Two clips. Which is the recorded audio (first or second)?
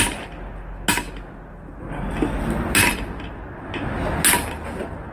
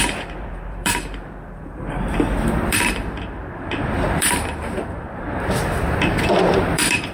first